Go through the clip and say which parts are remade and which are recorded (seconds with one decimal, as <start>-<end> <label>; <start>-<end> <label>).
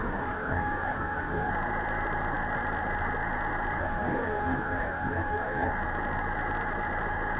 0.0-1.5 remade; 1.5-3.8 recorded; 3.8-5.7 remade; 5.7-7.4 recorded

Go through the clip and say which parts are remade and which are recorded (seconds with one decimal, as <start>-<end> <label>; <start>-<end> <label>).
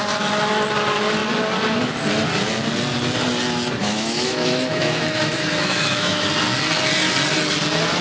0.0-3.8 recorded; 3.8-6.3 remade; 6.3-8.0 recorded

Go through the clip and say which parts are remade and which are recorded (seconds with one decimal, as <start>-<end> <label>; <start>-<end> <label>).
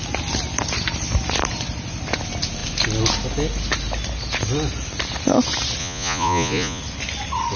0.0-5.8 recorded; 5.8-6.8 remade; 6.8-7.6 recorded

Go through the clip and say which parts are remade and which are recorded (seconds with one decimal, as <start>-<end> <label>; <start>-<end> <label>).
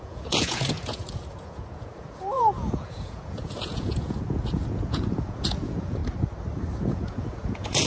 0.0-6.0 remade; 6.0-6.9 recorded; 6.9-7.9 remade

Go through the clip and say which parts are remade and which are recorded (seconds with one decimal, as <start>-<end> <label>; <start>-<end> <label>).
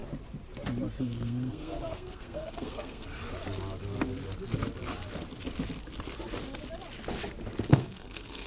0.0-1.0 recorded; 1.0-3.1 remade; 3.1-7.7 recorded; 7.7-8.5 remade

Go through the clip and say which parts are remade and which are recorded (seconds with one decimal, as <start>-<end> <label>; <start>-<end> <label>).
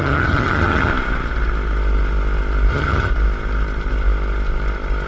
0.0-0.9 remade; 0.9-2.7 recorded; 2.7-3.1 remade; 3.1-5.1 recorded